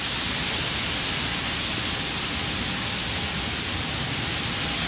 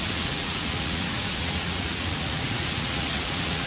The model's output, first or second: second